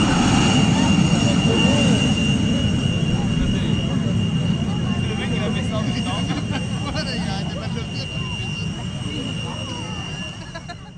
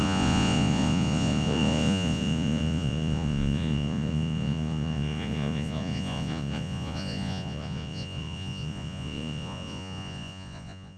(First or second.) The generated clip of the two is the second